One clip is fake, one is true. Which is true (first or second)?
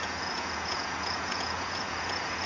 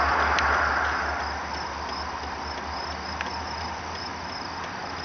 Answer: second